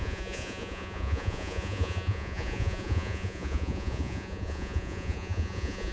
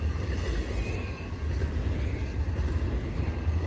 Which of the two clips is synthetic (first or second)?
first